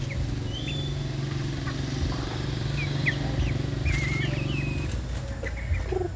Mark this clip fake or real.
real